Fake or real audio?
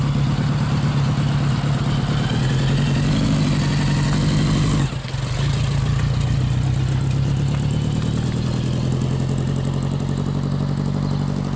real